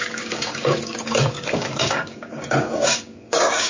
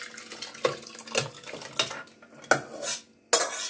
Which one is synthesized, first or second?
first